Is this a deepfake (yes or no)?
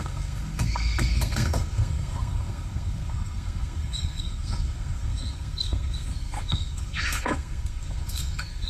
yes